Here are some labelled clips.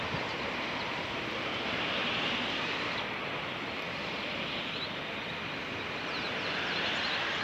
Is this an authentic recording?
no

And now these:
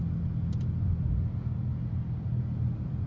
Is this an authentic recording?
yes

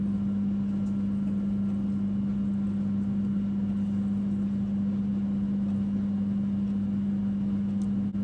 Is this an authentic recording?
yes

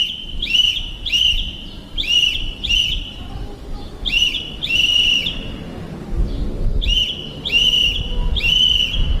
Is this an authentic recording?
no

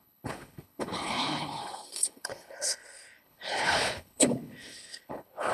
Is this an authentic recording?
no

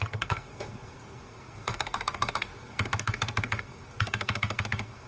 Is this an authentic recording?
no